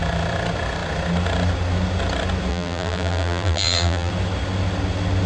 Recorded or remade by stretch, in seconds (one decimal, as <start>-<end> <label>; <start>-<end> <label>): 0.0-2.5 recorded; 2.5-4.1 remade; 4.1-5.3 recorded